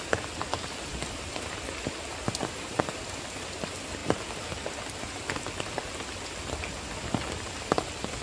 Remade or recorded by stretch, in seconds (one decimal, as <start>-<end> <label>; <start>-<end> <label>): 0.0-8.2 recorded